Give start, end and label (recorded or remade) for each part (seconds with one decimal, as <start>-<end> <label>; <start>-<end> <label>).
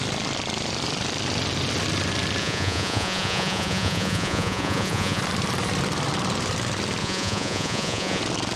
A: 0.0-2.4 recorded; 2.4-5.2 remade; 5.2-7.0 recorded; 7.0-8.2 remade; 8.2-8.6 recorded